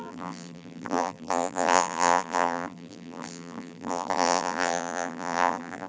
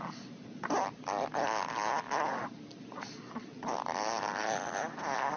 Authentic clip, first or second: second